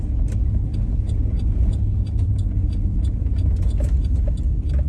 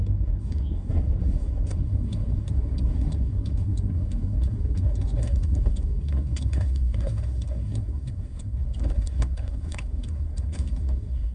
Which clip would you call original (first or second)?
first